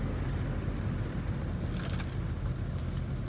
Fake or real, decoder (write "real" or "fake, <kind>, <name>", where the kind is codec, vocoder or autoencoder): real